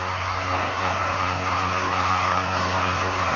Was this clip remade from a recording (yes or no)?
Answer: yes